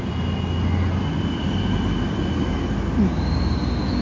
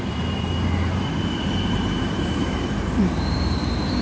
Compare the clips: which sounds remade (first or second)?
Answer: second